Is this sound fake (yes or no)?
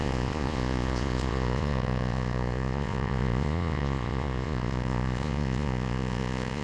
yes